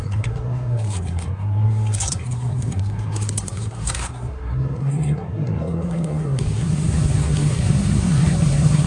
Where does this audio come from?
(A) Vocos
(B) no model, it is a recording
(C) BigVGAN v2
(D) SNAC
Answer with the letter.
D